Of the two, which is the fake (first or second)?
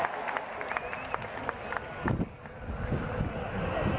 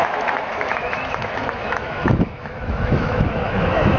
second